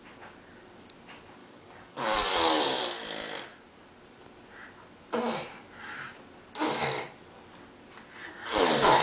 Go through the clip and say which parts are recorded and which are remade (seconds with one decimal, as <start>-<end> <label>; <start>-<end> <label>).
0.0-1.4 recorded; 1.4-2.8 remade; 2.8-8.4 recorded; 8.4-9.0 remade